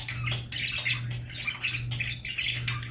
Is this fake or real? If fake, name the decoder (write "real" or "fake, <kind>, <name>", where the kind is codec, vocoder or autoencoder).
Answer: real